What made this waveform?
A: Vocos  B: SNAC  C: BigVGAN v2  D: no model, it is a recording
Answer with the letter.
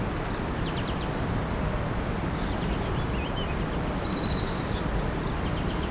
D